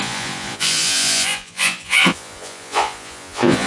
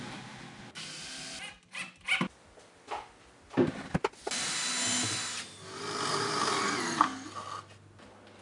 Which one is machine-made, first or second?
first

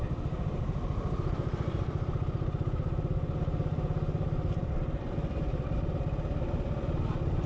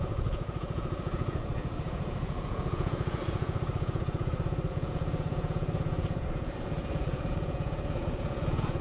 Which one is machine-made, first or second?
second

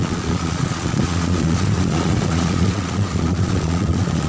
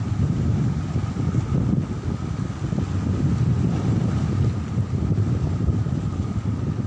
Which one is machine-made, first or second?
first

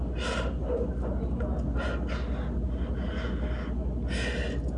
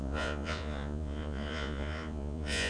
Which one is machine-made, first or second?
second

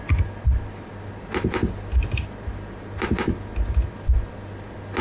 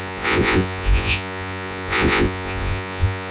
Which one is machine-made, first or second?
second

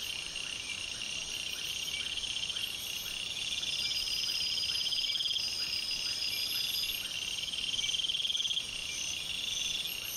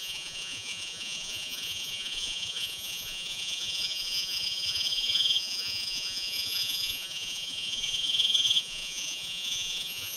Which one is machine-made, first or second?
second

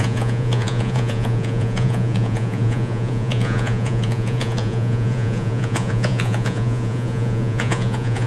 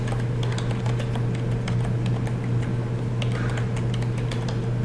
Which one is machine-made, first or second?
first